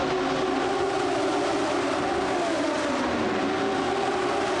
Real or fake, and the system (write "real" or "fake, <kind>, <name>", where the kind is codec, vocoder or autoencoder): real